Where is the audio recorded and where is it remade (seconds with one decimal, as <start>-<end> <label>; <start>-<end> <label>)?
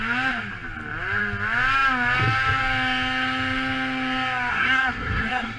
0.0-4.5 recorded; 4.5-5.6 remade